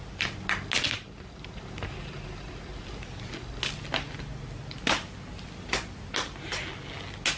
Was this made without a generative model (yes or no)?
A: yes